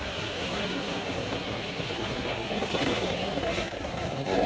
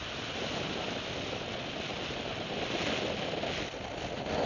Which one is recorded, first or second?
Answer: second